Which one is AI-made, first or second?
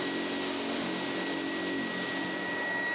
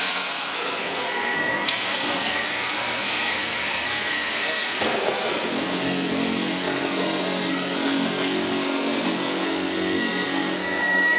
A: second